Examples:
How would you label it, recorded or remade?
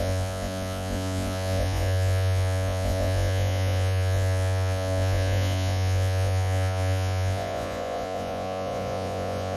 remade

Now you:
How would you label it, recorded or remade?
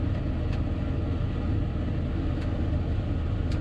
recorded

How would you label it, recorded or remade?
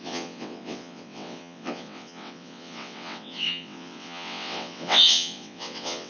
remade